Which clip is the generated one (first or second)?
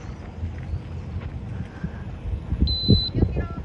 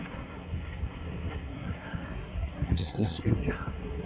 second